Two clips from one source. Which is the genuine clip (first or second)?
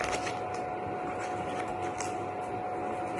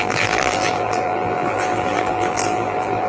first